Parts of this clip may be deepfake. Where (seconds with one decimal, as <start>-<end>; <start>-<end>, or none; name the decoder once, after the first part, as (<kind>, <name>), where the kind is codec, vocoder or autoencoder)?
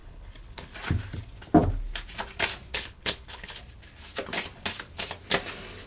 0.0-0.7 (codec, HILCodec); 2.7-3.6